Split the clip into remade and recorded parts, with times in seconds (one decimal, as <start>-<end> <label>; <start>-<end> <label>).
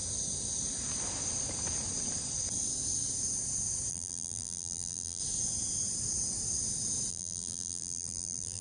0.0-3.9 recorded; 3.9-5.2 remade; 5.2-7.1 recorded; 7.1-8.6 remade